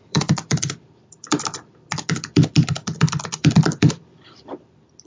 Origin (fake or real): fake